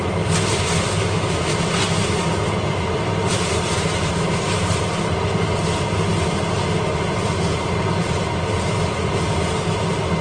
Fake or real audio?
real